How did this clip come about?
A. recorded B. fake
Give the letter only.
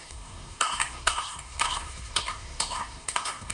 B